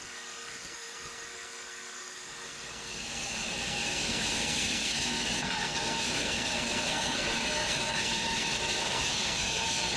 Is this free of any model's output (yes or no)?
no